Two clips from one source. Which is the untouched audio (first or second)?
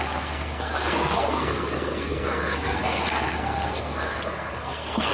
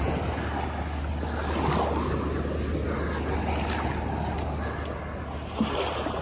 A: second